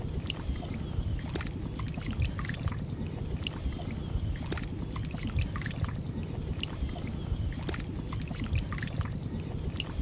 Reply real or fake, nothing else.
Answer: real